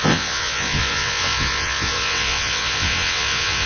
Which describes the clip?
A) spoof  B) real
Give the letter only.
A